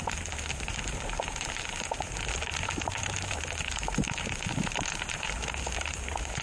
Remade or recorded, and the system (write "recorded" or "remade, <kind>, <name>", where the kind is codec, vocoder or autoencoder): remade, vocoder, BigVGAN v2